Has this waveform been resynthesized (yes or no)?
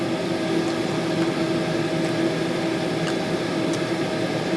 no